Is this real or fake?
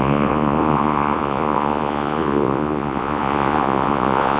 fake